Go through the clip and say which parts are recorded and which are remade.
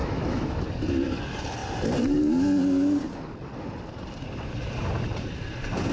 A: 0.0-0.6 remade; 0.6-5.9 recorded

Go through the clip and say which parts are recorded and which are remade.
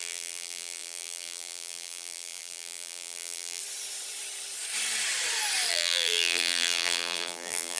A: 0.0-3.6 remade; 3.6-5.7 recorded; 5.7-7.8 remade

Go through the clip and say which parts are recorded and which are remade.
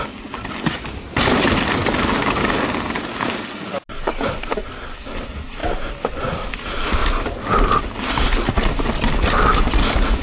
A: 0.0-10.2 recorded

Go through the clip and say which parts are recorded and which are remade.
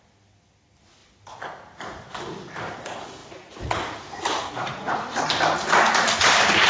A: 0.0-3.2 recorded; 3.2-5.2 remade; 5.2-6.7 recorded